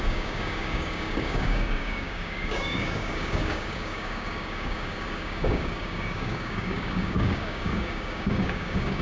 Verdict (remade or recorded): remade